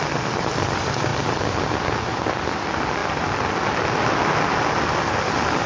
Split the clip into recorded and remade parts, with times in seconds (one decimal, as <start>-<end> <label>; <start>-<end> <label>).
0.0-5.7 recorded